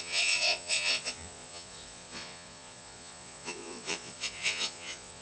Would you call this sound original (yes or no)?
no